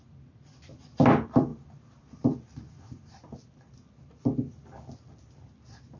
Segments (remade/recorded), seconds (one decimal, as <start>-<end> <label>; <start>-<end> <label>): 0.0-6.0 recorded